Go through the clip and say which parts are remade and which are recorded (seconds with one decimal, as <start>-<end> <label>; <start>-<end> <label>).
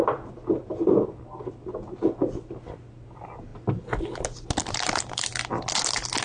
0.0-6.2 recorded